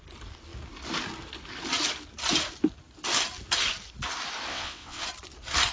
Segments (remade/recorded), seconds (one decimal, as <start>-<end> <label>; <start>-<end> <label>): 0.0-4.5 recorded; 4.5-5.0 remade; 5.0-5.7 recorded